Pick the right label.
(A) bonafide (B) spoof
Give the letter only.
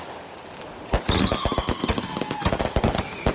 A